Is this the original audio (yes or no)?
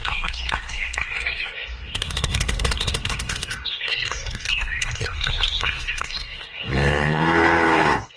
no